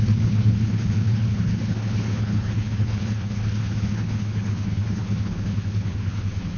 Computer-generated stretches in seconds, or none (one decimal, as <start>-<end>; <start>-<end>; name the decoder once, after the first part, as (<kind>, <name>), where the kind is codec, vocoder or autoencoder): 0.0-6.6 (codec, HILCodec)